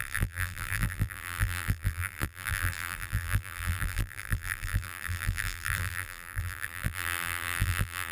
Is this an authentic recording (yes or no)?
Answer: no